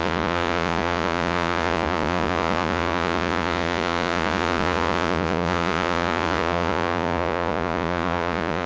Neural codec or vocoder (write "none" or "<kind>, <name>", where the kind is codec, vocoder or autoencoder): vocoder, Vocos